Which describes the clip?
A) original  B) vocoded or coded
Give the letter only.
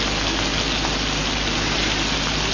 A